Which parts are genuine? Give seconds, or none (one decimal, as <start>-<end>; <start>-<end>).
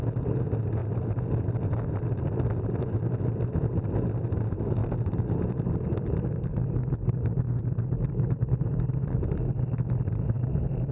0.0-0.8; 2.5-4.8; 6.6-7.6; 10.4-10.9